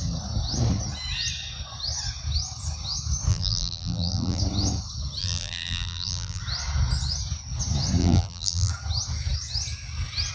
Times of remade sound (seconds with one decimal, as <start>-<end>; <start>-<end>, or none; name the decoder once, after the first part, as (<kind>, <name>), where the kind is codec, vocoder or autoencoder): 3.3-4.4 (vocoder, BigVGAN v2); 5.2-6.4; 8.0-8.7